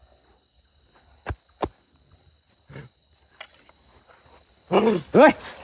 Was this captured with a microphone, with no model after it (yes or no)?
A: yes